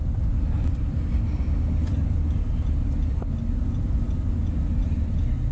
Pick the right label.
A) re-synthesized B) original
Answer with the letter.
B